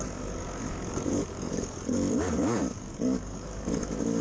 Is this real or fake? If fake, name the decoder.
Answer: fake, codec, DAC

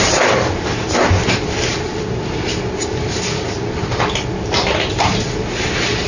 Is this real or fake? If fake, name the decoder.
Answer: real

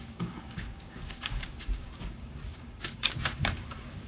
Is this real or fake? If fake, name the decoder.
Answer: fake, codec, DAC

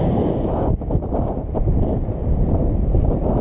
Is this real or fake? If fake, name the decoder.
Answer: real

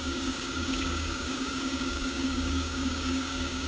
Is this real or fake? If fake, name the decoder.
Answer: fake, codec, DAC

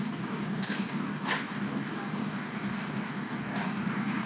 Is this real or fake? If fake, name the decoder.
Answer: fake, codec, DAC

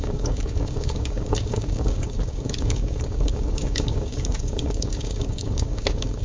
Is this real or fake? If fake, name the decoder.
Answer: fake, codec, DAC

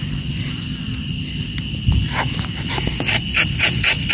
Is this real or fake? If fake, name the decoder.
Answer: real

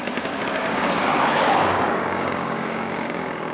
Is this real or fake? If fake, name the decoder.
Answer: fake, codec, DAC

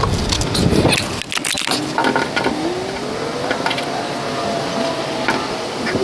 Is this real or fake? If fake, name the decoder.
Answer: real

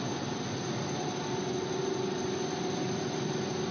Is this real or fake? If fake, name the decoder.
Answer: real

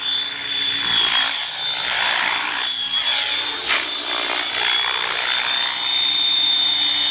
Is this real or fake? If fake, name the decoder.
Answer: real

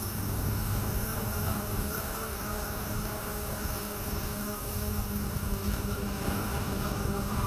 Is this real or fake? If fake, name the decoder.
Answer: fake, codec, DAC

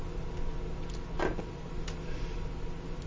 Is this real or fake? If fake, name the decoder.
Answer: real